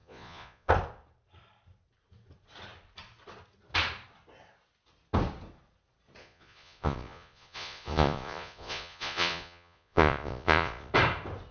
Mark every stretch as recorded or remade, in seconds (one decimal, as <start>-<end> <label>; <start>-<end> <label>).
0.0-0.7 remade; 0.7-6.2 recorded; 6.2-10.9 remade; 10.9-11.5 recorded